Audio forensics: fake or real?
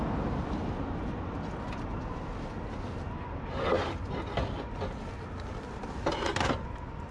real